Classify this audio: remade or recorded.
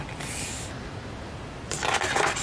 recorded